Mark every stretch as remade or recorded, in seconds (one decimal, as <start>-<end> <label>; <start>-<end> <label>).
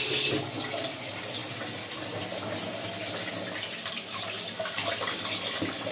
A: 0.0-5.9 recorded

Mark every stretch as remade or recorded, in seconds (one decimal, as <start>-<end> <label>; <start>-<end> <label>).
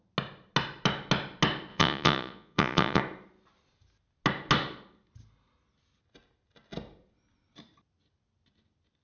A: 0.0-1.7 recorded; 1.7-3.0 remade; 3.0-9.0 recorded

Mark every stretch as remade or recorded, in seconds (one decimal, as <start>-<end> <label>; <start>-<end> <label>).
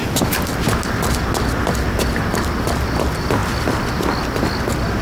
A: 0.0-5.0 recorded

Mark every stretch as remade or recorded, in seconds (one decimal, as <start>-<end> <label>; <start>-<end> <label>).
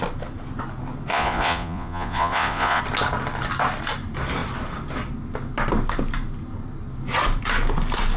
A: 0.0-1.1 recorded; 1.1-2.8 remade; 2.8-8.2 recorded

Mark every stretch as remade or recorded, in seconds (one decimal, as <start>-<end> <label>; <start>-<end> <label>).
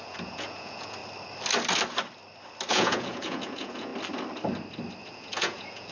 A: 0.0-1.0 remade; 1.0-2.7 recorded; 2.7-3.9 remade; 3.9-5.0 recorded; 5.0-5.9 remade